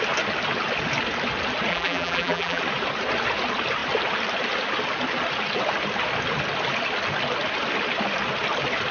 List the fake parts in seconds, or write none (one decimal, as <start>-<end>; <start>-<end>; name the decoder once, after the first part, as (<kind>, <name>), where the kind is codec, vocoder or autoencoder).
1.7-2.6 (vocoder, BigVGAN v2)